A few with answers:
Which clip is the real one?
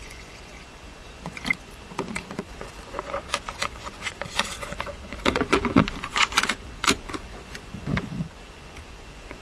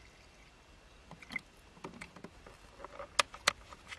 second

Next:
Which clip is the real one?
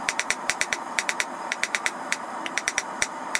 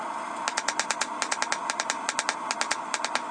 second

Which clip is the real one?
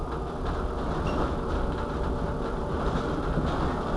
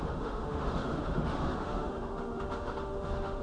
first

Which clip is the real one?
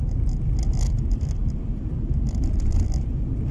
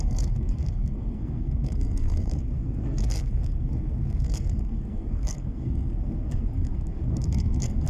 first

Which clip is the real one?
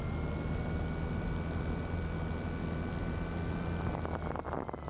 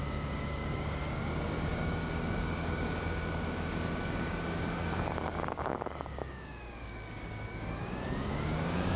first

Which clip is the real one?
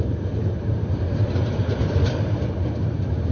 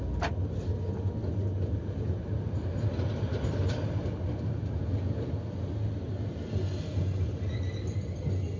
second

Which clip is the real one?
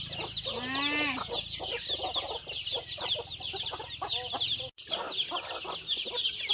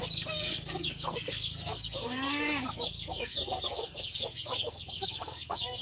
first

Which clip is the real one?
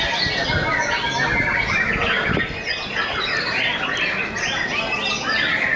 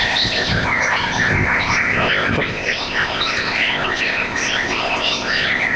first